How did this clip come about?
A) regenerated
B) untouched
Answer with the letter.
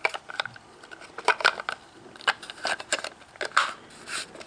B